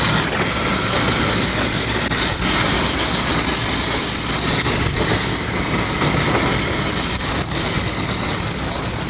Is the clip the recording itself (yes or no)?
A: yes